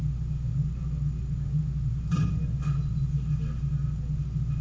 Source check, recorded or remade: recorded